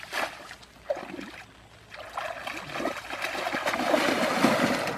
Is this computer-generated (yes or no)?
no